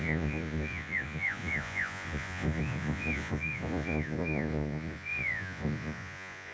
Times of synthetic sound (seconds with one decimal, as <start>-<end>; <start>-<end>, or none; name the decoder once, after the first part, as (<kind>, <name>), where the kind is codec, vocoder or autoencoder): 0.0-6.5 (vocoder, Vocos)